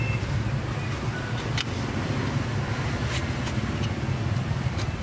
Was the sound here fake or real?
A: real